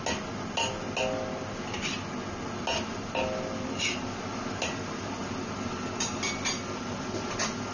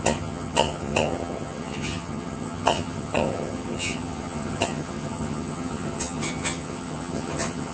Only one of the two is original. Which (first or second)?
first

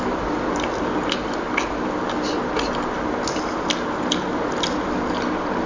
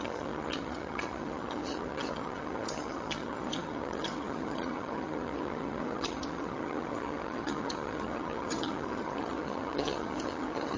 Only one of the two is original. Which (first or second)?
first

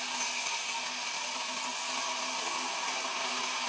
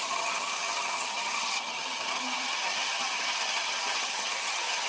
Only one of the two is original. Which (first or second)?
first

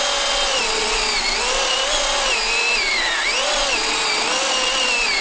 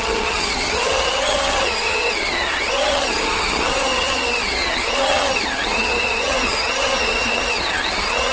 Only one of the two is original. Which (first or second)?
first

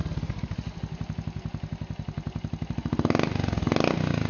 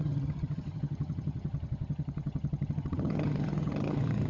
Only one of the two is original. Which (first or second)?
first